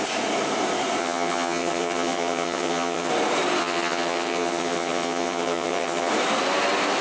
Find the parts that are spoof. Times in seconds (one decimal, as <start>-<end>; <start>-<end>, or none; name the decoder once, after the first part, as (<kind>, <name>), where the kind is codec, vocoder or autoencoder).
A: 1.0-3.1 (vocoder, HiFi-GAN); 3.6-6.1